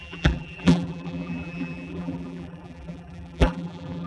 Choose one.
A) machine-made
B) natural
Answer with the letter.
A